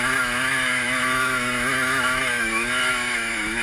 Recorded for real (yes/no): no